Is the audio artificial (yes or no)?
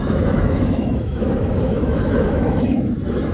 yes